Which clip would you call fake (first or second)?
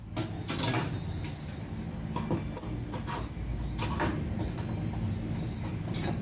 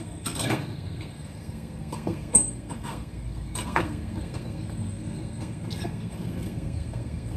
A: second